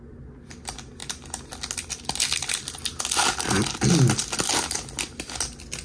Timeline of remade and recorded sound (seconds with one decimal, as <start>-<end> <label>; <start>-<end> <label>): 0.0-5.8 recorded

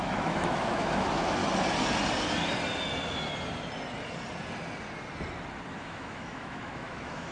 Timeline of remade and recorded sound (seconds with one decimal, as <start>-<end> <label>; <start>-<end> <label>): 0.0-1.4 remade; 1.4-5.8 recorded; 5.8-7.3 remade

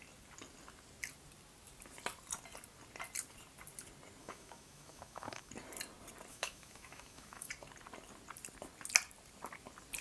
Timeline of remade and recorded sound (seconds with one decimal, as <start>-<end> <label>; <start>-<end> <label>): 0.0-4.2 recorded; 4.2-5.5 remade; 5.5-6.3 recorded; 6.3-7.5 remade; 7.5-10.0 recorded